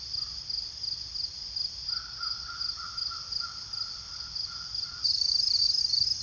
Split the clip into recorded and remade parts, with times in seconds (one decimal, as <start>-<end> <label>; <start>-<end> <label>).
0.0-6.2 recorded